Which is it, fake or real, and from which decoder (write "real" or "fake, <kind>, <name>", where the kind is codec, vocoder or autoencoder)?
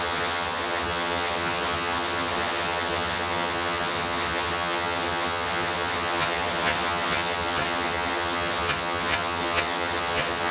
fake, vocoder, HiFi-GAN